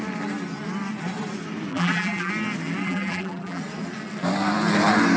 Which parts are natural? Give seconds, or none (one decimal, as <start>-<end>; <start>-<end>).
0.0-1.7; 2.3-2.8; 3.6-5.2